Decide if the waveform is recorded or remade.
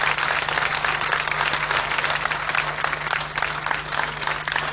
recorded